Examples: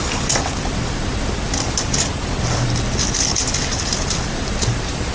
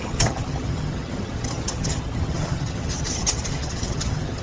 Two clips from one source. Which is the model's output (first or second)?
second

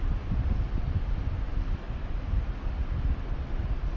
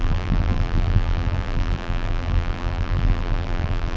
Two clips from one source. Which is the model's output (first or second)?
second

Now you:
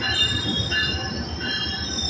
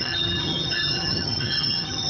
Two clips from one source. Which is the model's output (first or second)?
second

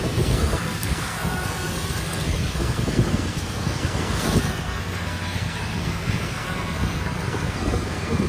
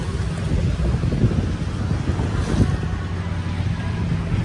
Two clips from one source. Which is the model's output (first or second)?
first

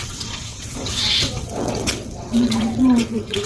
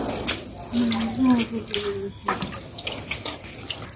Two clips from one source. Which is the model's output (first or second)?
first